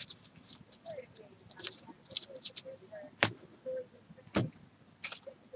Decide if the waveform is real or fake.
real